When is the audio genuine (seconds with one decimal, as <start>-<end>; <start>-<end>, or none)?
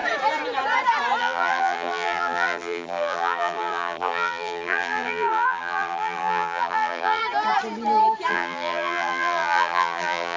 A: 0.0-1.2; 7.2-8.3